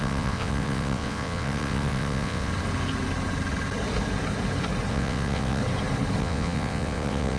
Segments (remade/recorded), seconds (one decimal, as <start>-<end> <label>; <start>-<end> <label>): 0.0-2.5 remade; 2.5-4.9 recorded; 4.9-5.6 remade; 5.6-6.2 recorded; 6.2-7.4 remade